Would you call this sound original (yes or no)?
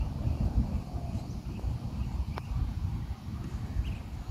yes